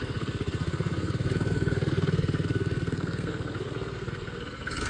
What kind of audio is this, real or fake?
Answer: fake